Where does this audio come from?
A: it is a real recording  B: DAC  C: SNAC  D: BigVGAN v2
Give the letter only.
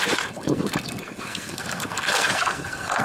C